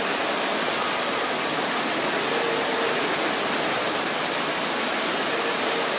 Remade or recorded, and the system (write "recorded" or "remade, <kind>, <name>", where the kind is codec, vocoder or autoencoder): recorded